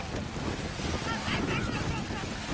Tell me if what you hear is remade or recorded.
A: recorded